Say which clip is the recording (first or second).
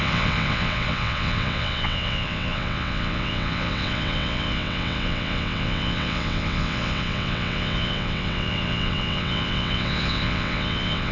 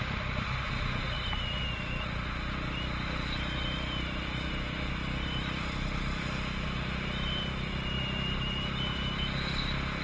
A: second